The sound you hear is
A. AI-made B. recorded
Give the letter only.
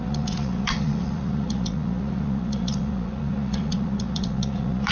A